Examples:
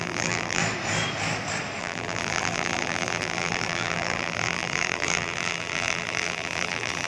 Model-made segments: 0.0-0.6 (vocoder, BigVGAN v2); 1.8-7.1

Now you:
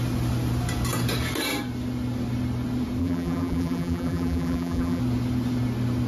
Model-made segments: 3.0-5.0 (vocoder, BigVGAN v2)

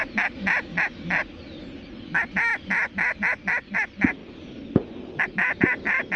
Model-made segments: 4.2-6.2 (vocoder, BigVGAN v2)

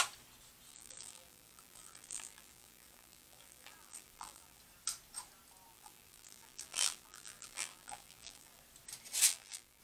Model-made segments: 0.7-4.6 (vocoder, BigVGAN v2); 5.7-8.6; 9.3-9.8

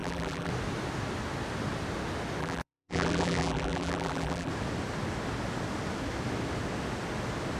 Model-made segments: 0.0-0.5 (vocoder, BigVGAN v2); 2.4-4.5

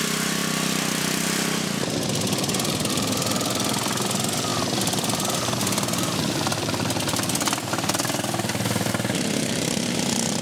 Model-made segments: 0.4-2.9 (vocoder, BigVGAN v2); 4.5-8.9

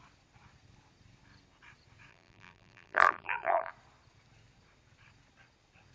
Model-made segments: 2.1-3.7 (vocoder, BigVGAN v2)

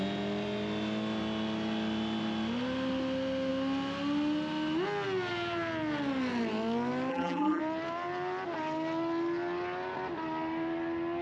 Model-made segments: 7.1-7.6 (vocoder, BigVGAN v2)